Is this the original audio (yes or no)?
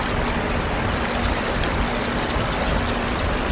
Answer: yes